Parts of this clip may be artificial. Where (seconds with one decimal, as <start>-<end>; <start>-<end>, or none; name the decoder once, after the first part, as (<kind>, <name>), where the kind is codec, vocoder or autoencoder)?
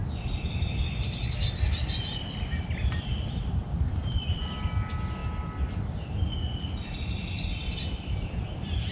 none